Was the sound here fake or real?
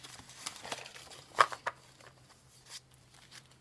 fake